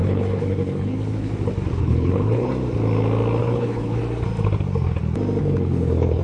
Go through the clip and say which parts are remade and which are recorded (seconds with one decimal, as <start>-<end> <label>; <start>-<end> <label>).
0.0-1.3 remade; 1.3-1.8 recorded; 1.8-2.5 remade; 2.5-3.4 recorded; 3.4-4.0 remade; 4.0-5.4 recorded; 5.4-6.2 remade

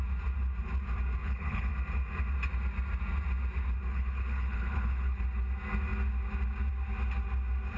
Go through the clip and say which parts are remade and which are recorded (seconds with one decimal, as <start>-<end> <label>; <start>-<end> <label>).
0.0-1.2 recorded; 1.2-1.7 remade; 1.7-3.9 recorded; 3.9-5.2 remade; 5.2-7.8 recorded

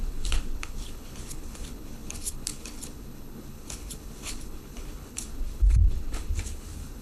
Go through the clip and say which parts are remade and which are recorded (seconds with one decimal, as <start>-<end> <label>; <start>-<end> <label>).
0.0-7.0 remade